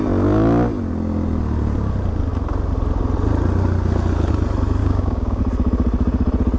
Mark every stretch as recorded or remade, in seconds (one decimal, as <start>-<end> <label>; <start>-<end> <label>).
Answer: 0.0-4.8 recorded; 4.8-5.4 remade; 5.4-6.6 recorded